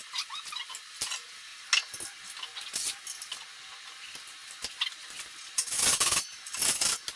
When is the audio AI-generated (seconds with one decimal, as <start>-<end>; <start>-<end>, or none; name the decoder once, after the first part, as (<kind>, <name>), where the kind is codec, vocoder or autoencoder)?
none